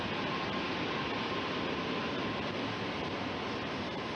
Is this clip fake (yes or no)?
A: no